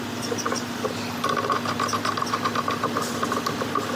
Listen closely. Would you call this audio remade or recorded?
recorded